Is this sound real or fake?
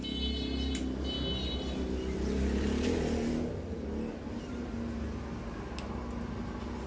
real